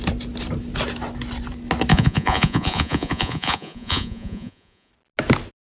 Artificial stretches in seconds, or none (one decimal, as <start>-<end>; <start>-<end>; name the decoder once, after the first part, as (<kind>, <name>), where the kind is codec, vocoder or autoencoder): 1.9-4.9 (vocoder, Vocos)